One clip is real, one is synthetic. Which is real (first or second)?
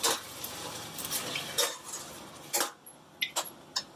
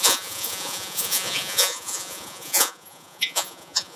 first